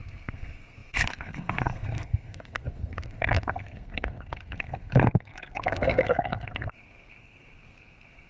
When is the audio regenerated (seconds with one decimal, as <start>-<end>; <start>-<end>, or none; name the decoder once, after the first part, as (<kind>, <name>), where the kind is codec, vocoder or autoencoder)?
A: 0.0-8.3 (codec, SNAC)